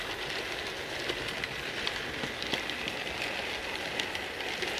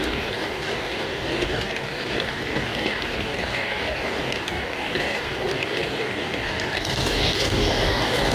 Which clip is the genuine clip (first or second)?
first